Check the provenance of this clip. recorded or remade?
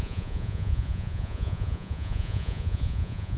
remade